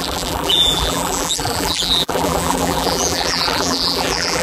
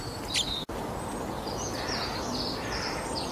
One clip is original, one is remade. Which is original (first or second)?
second